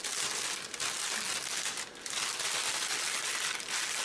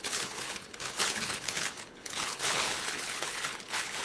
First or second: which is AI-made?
second